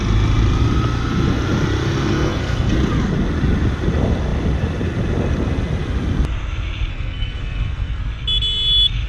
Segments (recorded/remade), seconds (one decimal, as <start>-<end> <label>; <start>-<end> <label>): 0.0-2.1 recorded; 2.1-2.7 remade; 2.7-6.9 recorded; 6.9-8.0 remade; 8.0-9.1 recorded